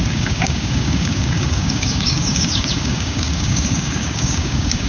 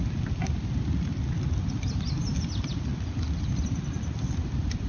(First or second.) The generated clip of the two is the first